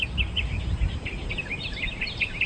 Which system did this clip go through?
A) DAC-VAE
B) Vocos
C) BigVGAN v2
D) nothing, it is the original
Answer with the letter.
C